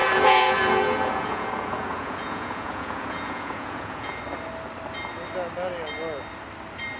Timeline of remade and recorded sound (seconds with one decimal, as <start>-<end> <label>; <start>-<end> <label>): 0.0-4.2 remade; 4.2-7.0 recorded